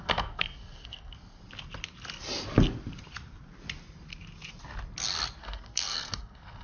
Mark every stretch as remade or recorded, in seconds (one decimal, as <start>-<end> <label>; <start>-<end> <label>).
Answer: 0.0-1.4 remade; 1.4-5.4 recorded; 5.4-6.6 remade

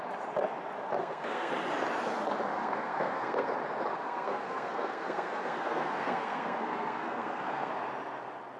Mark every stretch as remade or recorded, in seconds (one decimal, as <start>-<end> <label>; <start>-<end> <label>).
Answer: 0.0-1.0 recorded; 1.0-1.5 remade; 1.5-2.5 recorded; 2.5-3.5 remade; 3.5-3.9 recorded; 3.9-7.7 remade; 7.7-8.6 recorded

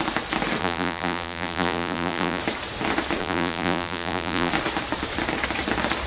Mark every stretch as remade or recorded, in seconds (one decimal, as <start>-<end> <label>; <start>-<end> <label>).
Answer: 0.0-0.6 recorded; 0.6-2.4 remade; 2.4-3.2 recorded; 3.2-4.5 remade; 4.5-6.1 recorded

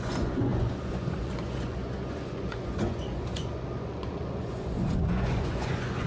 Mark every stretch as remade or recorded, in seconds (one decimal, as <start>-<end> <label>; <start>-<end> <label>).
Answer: 0.0-6.1 remade

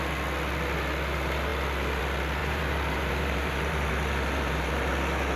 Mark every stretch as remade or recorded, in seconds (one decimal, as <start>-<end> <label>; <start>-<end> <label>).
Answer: 0.0-2.4 recorded; 2.4-4.9 remade; 4.9-5.4 recorded

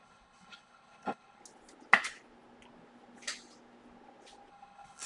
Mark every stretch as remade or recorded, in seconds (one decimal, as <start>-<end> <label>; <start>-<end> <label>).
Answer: 0.0-1.4 remade; 1.4-4.5 recorded; 4.5-5.1 remade

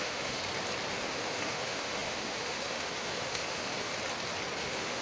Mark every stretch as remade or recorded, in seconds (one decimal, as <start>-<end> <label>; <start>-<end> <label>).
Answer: 0.0-0.4 remade; 0.4-0.9 recorded; 0.9-3.9 remade; 3.9-4.6 recorded; 4.6-5.0 remade